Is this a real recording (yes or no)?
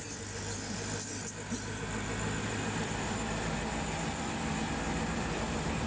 no